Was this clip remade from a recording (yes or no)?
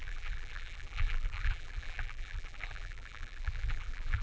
yes